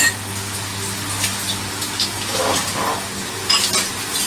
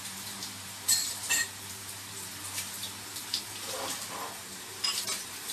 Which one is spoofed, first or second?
second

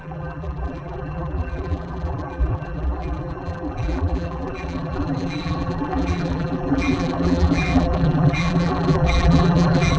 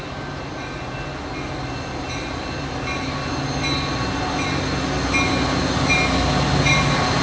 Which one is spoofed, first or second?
first